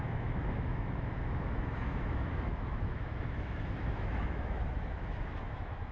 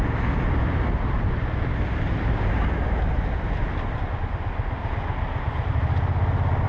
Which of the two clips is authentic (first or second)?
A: second